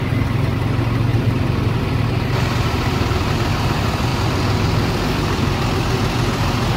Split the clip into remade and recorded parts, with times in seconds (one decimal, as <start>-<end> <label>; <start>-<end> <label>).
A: 0.0-1.1 recorded; 1.1-1.8 remade; 1.8-4.1 recorded; 4.1-4.9 remade; 4.9-6.8 recorded